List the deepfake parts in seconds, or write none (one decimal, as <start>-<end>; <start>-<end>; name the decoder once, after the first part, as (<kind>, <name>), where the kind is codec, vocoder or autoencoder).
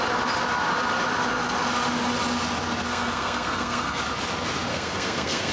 2.9-4.0 (codec, SNAC); 4.7-5.5